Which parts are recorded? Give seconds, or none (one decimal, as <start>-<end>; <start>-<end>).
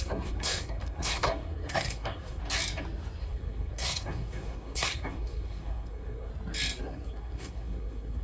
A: 2.4-3.2; 6.3-6.8